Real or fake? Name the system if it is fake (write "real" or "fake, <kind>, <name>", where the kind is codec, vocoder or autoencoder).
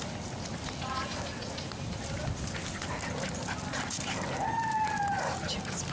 real